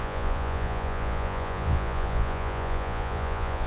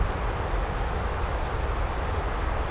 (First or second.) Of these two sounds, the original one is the second